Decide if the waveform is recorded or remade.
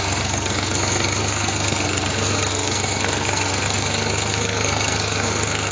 remade